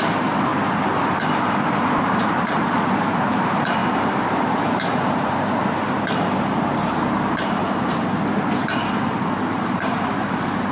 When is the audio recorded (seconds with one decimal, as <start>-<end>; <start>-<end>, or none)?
0.5-2.0; 3.8-4.3; 7.6-9.5